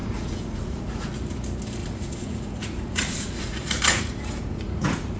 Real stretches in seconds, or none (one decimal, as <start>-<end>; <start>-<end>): 1.1-1.8